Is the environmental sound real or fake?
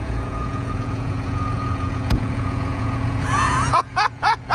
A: fake